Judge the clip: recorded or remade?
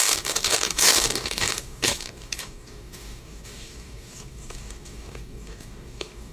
remade